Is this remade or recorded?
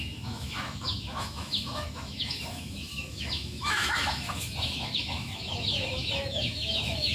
remade